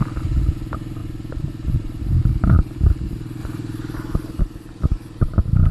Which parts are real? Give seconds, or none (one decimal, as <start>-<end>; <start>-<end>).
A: 0.0-1.0; 2.0-3.4; 4.4-5.7